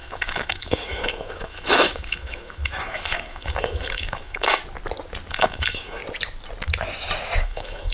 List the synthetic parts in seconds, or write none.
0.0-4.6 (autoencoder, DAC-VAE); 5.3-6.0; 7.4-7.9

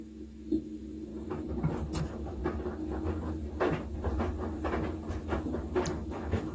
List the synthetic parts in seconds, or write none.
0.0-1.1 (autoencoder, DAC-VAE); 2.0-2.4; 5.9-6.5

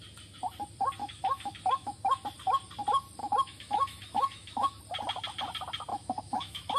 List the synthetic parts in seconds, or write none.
1.0-2.0 (autoencoder, DAC-VAE); 3.2-4.8; 5.9-6.8

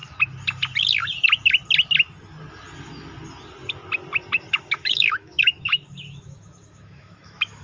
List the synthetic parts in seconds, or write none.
4.5-7.6 (autoencoder, DAC-VAE)